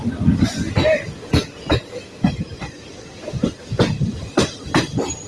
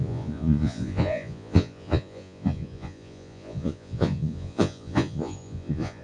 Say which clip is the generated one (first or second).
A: second